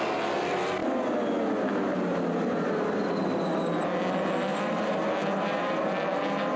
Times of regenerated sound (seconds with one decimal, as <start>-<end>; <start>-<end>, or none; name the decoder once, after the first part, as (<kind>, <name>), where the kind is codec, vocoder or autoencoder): none